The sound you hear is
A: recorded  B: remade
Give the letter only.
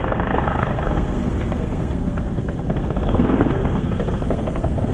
B